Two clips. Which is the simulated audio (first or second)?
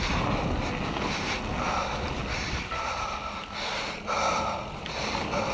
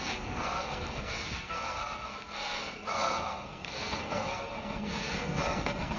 second